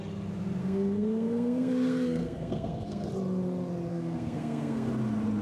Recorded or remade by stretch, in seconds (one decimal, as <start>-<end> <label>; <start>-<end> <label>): 0.0-0.6 recorded; 0.6-3.1 remade; 3.1-3.9 recorded; 3.9-4.9 remade; 4.9-5.4 recorded